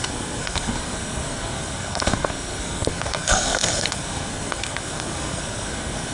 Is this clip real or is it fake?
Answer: fake